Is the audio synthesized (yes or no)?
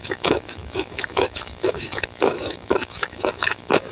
yes